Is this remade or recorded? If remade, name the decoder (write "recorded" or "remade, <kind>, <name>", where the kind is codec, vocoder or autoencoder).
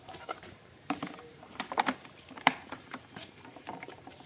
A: remade, vocoder, BigVGAN v2